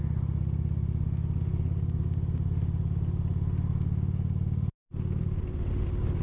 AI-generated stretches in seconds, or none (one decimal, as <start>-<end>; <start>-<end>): none